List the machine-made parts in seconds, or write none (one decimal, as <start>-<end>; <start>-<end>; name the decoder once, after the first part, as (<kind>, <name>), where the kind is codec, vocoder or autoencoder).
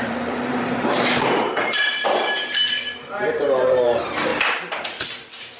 0.0-1.8 (vocoder, BigVGAN v2); 3.0-4.3